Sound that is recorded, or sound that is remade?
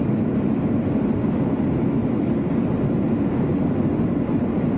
recorded